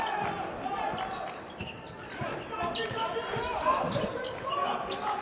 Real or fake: real